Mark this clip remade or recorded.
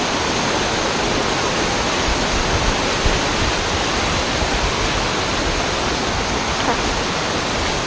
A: recorded